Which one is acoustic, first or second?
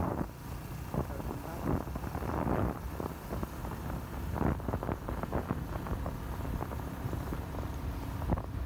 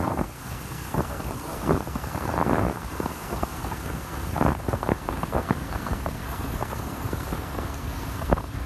first